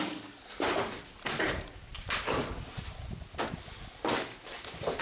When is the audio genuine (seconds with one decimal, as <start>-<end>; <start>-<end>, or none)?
0.4-1.4; 1.9-5.0